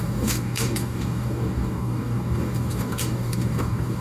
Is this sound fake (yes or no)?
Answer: yes